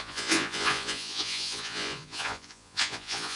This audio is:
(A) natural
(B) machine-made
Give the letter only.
B